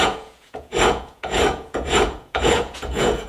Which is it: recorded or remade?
remade